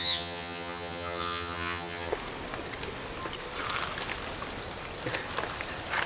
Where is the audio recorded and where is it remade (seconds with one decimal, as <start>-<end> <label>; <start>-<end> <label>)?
0.0-2.1 remade; 2.1-6.1 recorded